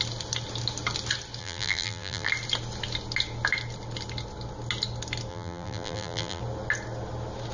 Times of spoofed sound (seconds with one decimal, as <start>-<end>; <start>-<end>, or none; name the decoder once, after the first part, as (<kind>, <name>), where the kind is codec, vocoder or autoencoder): 1.4-2.3 (vocoder, BigVGAN v2); 5.3-6.4